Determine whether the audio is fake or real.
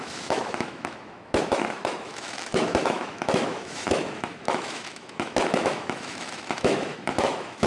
fake